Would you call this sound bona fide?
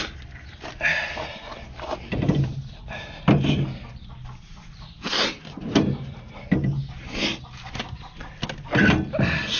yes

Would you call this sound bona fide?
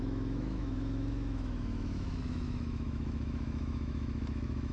no